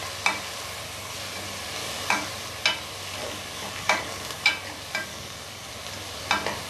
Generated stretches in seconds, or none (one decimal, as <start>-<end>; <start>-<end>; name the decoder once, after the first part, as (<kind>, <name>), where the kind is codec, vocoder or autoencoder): 1.8-2.3 (codec, DAC); 3.2-4.5; 5.1-5.7